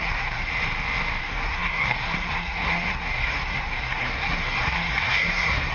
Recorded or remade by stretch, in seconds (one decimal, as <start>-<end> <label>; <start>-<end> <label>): 0.0-0.5 remade; 0.5-1.2 recorded; 1.2-5.7 remade